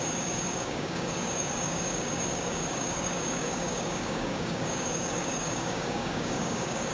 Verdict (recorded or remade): remade